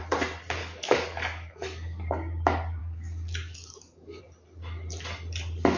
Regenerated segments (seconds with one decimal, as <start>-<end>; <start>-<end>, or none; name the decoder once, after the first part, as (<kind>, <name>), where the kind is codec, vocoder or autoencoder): 0.6-2.1 (codec, DAC); 2.8-4.2